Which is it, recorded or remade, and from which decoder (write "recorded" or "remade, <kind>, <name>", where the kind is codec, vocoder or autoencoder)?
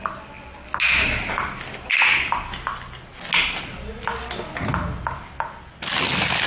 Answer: recorded